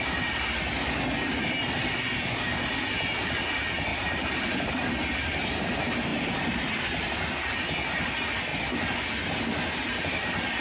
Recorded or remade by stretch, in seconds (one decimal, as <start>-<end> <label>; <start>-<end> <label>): 0.0-3.9 recorded; 3.9-4.7 remade; 4.7-10.6 recorded